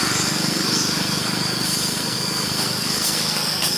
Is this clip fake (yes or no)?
yes